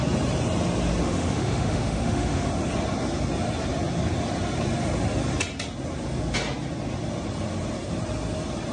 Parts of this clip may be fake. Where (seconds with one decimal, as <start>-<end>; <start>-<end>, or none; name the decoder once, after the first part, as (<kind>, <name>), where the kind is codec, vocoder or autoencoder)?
1.0-2.5 (autoencoder, DAC-VAE)